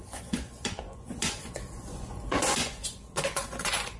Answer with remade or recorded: remade